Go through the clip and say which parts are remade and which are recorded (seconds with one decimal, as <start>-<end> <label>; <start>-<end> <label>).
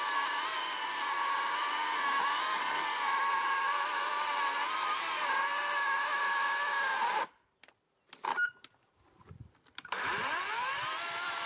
0.0-5.6 remade; 5.6-6.2 recorded; 6.2-11.5 remade